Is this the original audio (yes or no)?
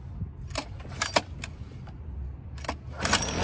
yes